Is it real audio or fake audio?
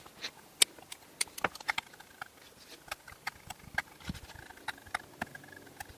real